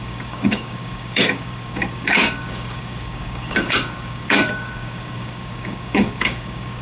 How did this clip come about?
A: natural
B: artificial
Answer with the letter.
B